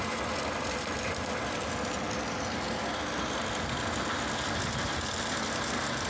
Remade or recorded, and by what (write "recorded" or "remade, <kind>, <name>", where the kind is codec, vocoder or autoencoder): recorded